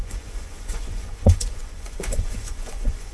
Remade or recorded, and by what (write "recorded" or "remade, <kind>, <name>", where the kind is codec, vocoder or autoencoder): remade, vocoder, Vocos